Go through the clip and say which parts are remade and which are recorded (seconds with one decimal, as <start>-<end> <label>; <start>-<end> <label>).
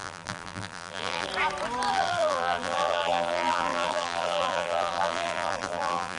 0.0-1.3 remade; 1.3-1.9 recorded; 1.9-6.2 remade